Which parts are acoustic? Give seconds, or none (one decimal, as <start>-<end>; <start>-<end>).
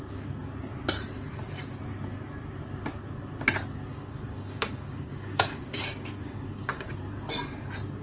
0.0-3.9; 7.0-8.0